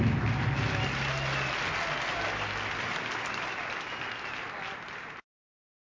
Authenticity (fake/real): real